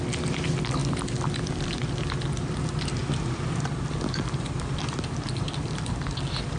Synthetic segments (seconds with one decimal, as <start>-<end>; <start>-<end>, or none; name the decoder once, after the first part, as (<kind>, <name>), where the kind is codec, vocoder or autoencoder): 0.8-1.7 (vocoder, BigVGAN v2); 3.0-6.6